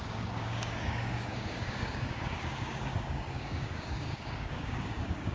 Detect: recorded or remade remade